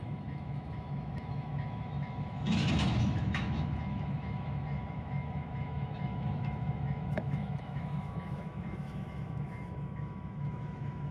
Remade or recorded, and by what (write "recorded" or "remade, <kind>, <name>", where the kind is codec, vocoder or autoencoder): remade, autoencoder, DAC-VAE